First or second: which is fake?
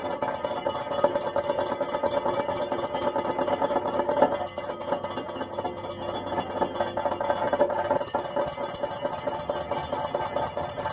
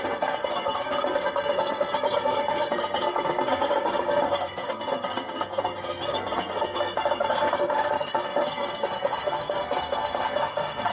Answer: second